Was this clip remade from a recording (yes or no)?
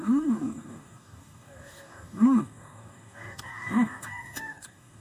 yes